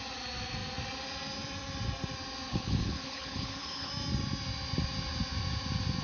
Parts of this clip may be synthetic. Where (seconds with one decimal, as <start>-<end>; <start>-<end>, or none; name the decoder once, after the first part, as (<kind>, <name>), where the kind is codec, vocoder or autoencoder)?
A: 2.5-3.9 (codec, HILCodec)